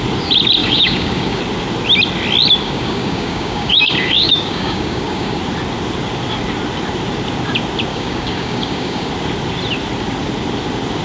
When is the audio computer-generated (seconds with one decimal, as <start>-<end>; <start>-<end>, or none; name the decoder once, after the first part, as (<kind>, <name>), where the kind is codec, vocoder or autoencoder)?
0.6-1.4 (codec, DAC); 2.6-5.4; 7.9-9.1